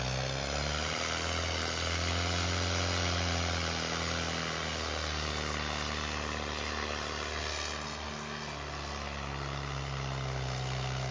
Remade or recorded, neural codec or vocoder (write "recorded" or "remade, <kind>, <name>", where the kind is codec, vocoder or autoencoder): recorded